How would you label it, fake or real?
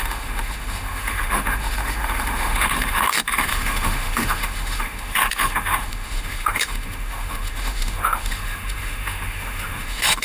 fake